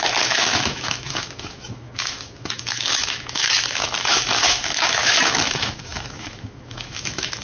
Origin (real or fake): fake